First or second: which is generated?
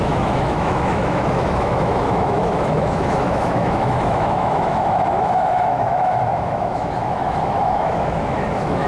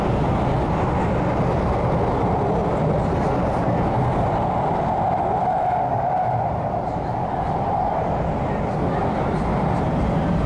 first